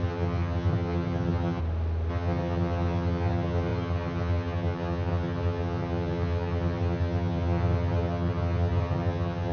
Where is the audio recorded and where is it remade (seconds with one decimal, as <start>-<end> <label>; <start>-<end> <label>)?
0.0-1.6 remade; 1.6-2.1 recorded; 2.1-9.5 remade